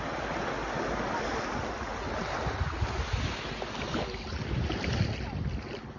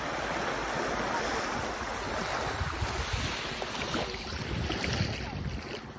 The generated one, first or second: second